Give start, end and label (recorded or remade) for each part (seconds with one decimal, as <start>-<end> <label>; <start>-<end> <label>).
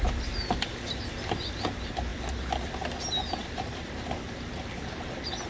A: 0.0-5.5 recorded